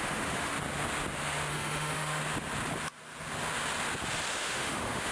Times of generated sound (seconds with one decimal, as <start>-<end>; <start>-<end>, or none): 0.0-0.5; 1.5-2.2; 4.3-5.1